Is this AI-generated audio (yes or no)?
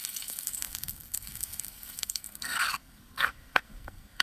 yes